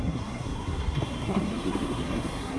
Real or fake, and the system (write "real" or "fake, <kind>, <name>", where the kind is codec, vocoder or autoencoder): fake, codec, SNAC